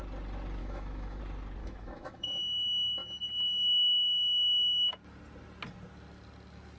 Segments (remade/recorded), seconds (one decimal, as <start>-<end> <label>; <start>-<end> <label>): 0.0-0.6 recorded; 0.6-1.2 remade; 1.2-1.6 recorded; 1.6-2.4 remade; 2.4-6.8 recorded